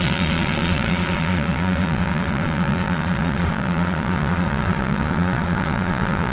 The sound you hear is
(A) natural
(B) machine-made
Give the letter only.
B